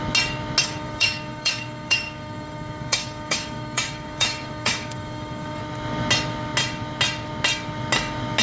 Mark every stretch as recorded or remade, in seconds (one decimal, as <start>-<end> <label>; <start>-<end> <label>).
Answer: 0.0-0.6 recorded; 0.6-5.6 remade; 5.6-8.4 recorded